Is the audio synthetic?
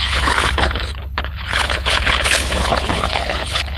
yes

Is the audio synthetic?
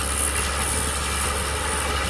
no